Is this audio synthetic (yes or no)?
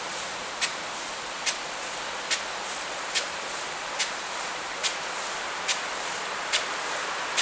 no